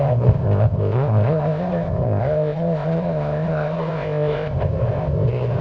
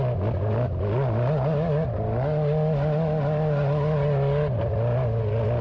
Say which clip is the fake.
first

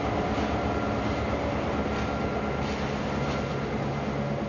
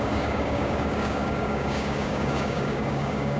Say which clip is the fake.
second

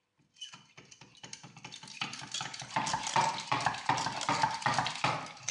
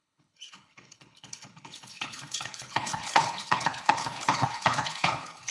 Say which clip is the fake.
second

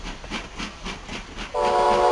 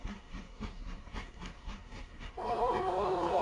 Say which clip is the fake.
second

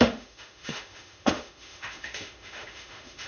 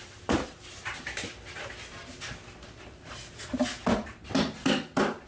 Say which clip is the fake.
first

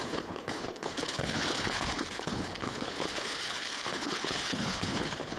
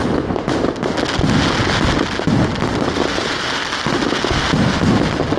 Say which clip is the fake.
first